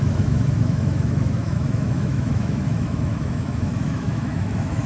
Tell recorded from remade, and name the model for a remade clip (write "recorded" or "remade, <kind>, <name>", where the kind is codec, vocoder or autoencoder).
remade, autoencoder, DAC-VAE